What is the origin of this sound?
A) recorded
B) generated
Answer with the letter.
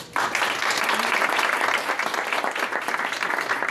A